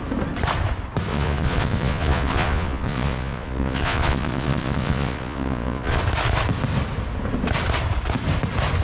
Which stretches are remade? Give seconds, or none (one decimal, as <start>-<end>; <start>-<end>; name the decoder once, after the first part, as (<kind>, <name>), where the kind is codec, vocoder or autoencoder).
1.1-6.0 (vocoder, Vocos)